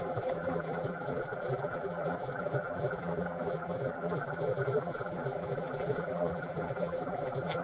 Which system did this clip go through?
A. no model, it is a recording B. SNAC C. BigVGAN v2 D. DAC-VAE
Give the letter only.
C